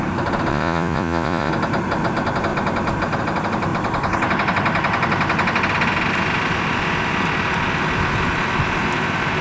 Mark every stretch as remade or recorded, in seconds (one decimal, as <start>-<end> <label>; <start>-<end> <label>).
0.0-0.5 recorded; 0.5-1.5 remade; 1.5-9.4 recorded